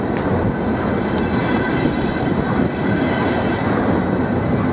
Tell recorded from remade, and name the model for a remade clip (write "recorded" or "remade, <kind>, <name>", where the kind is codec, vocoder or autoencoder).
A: recorded